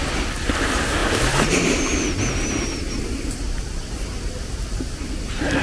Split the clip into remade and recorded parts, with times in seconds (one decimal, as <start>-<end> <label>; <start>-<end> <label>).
0.0-1.9 remade; 1.9-5.6 recorded